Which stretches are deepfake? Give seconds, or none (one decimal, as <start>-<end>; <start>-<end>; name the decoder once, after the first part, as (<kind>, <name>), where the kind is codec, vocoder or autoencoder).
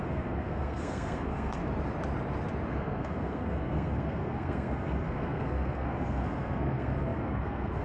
0.0-1.6 (codec, SNAC); 2.7-7.8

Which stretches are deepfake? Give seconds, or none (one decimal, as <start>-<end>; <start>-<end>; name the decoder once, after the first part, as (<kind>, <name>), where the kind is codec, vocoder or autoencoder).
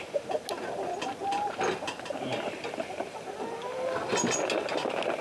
none